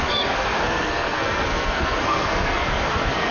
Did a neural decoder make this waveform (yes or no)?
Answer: yes